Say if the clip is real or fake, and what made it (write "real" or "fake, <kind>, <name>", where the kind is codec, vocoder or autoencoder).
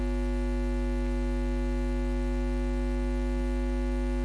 real